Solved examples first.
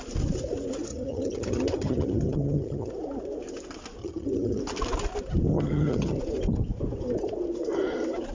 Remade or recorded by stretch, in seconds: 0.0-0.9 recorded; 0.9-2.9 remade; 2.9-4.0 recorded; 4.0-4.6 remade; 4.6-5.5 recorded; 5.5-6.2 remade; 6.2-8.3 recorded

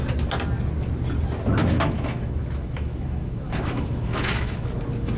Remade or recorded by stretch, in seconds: 0.0-1.6 recorded; 1.6-4.7 remade; 4.7-5.2 recorded

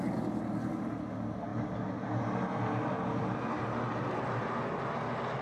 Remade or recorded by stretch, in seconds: 0.0-5.4 recorded

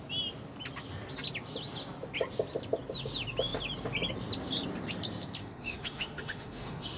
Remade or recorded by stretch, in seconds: 0.0-5.4 recorded; 5.4-7.0 remade

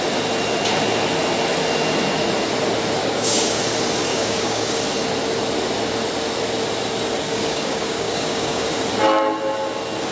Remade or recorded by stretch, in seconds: 0.0-3.0 recorded; 3.0-3.6 remade; 3.6-4.1 recorded; 4.1-4.8 remade; 4.8-7.3 recorded; 7.3-8.7 remade; 8.7-10.1 recorded

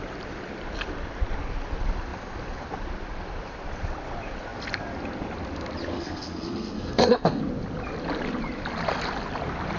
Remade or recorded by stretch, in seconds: 0.0-5.9 recorded; 5.9-7.4 remade; 7.4-9.8 recorded